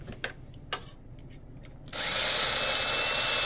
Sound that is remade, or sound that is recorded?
recorded